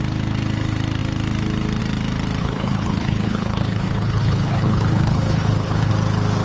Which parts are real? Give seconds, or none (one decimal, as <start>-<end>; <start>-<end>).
0.0-2.4; 5.9-6.4